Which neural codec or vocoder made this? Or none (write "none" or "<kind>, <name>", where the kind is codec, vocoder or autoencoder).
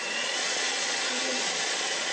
vocoder, Vocos